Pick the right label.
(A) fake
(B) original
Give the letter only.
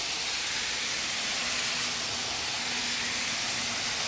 B